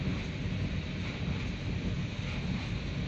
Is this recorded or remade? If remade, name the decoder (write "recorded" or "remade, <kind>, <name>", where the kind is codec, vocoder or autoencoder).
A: recorded